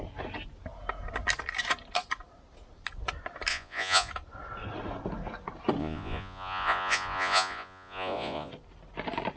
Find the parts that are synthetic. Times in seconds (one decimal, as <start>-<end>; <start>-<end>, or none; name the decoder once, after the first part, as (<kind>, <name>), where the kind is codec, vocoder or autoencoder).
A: 3.5-4.1 (vocoder, Vocos); 5.8-8.5